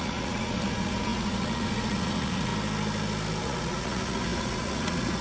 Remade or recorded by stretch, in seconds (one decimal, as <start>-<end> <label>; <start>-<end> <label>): 0.0-2.5 remade; 2.5-3.4 recorded; 3.4-5.2 remade